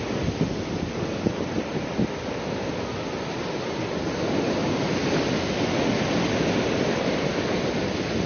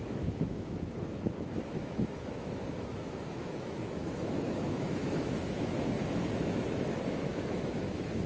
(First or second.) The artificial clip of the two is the second